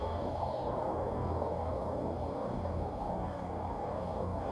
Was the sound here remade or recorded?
remade